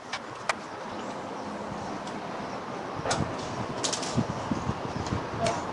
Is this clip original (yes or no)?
yes